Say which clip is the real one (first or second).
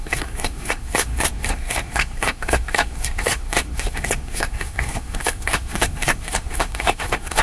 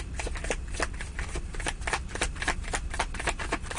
second